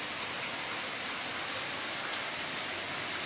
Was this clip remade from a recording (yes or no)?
no